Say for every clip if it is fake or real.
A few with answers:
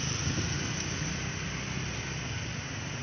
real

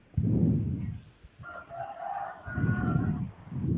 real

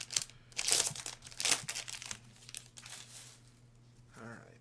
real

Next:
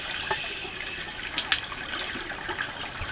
real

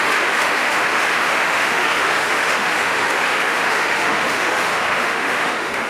fake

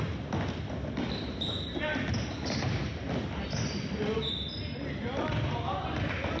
real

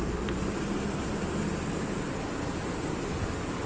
fake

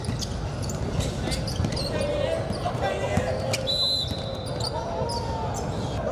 real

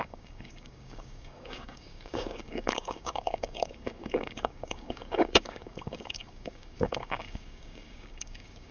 fake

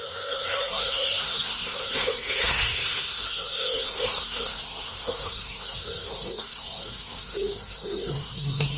fake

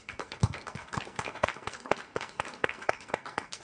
fake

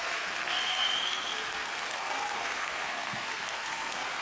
fake